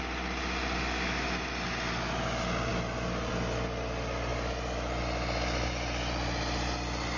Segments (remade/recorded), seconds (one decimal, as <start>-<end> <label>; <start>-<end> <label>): 0.0-7.2 recorded